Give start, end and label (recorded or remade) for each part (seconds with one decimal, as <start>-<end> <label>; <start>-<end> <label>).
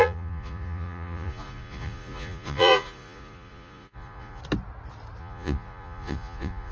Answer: 0.0-4.4 remade; 4.4-5.2 recorded; 5.2-6.7 remade